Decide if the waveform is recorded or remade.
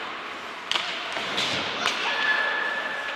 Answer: recorded